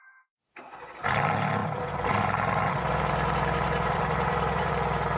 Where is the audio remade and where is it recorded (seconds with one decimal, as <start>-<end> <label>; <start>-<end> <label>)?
0.0-1.6 recorded; 1.6-4.7 remade; 4.7-5.2 recorded